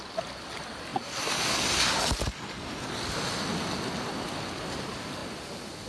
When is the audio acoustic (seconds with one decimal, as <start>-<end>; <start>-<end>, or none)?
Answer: 0.0-5.9